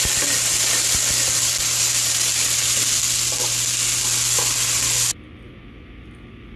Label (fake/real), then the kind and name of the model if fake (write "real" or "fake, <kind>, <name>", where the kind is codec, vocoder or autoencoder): real